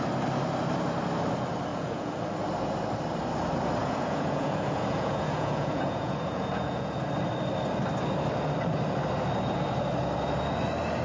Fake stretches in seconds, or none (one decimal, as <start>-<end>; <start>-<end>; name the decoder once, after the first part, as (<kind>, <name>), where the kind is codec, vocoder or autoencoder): 1.7-2.2 (vocoder, Vocos); 3.8-7.1